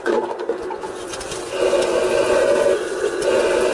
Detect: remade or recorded remade